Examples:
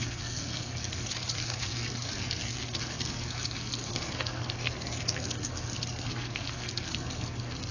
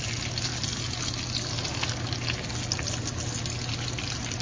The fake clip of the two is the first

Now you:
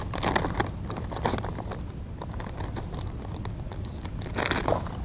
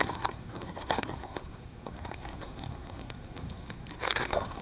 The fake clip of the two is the second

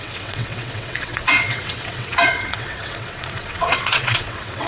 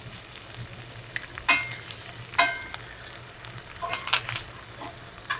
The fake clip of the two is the first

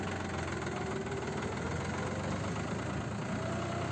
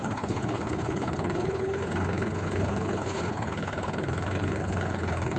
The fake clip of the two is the second